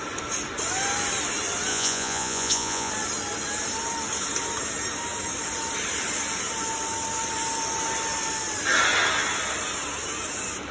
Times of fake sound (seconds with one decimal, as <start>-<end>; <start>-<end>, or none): 1.7-2.9